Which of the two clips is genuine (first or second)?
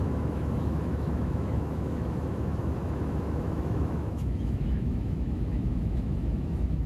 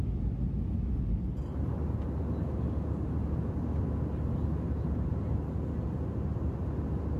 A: second